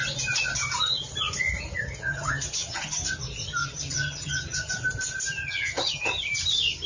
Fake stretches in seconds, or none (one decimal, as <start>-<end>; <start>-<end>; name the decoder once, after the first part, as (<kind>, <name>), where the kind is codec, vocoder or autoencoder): 2.1-3.0 (vocoder, HiFi-GAN); 3.6-4.7; 5.4-6.2